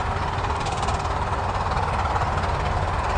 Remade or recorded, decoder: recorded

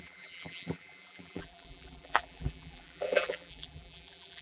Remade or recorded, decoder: remade, vocoder, BigVGAN v2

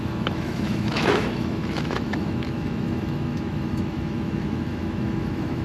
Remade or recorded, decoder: remade, autoencoder, DAC-VAE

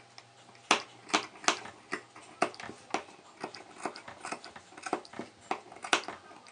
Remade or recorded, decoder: recorded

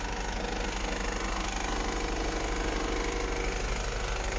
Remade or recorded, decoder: recorded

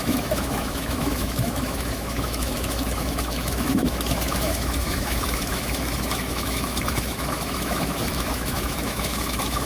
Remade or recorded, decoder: remade, autoencoder, DAC-VAE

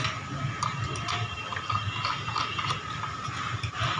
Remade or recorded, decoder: recorded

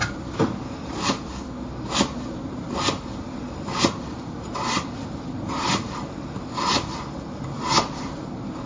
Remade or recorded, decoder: remade, vocoder, BigVGAN v2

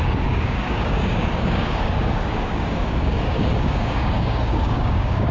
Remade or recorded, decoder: remade, codec, DAC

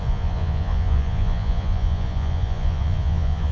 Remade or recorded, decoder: remade, vocoder, Vocos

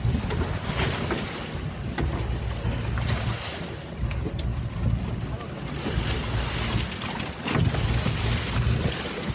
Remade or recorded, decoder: recorded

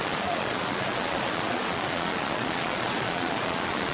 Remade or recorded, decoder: remade, vocoder, Vocos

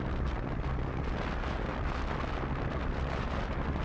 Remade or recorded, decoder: recorded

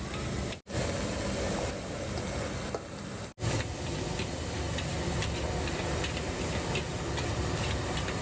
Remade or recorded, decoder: recorded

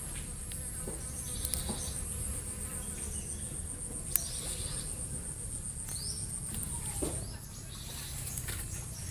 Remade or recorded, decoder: recorded